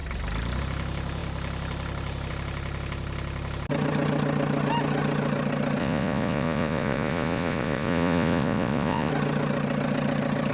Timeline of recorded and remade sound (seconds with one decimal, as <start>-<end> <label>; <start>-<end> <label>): 0.0-5.8 recorded; 5.8-9.1 remade; 9.1-10.5 recorded